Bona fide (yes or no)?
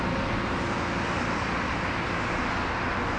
yes